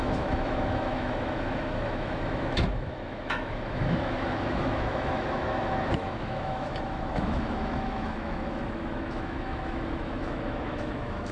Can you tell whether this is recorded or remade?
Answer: remade